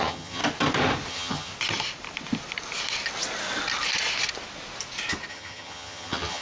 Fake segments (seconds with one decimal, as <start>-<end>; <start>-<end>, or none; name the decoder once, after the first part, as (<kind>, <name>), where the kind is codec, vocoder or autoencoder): 0.0-0.4 (vocoder, HiFi-GAN); 1.1-1.5; 5.3-6.4